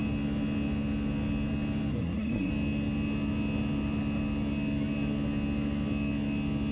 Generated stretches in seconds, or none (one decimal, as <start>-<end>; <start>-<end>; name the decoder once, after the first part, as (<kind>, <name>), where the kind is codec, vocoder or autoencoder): 1.9-2.5 (codec, SNAC)